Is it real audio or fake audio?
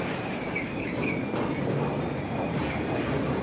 real